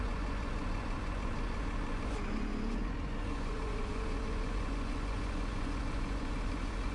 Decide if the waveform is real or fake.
fake